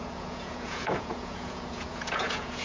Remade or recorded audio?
remade